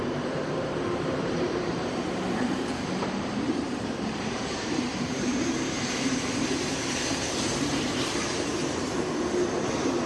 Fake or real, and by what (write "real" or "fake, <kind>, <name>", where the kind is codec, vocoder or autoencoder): fake, vocoder, BigVGAN v2